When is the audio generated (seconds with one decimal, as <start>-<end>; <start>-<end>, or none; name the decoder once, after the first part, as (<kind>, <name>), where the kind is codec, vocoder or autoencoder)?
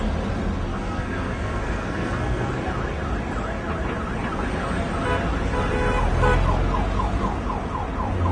0.7-2.5 (codec, SNAC)